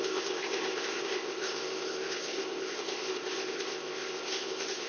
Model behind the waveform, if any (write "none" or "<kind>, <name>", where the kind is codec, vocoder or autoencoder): codec, ZipCodec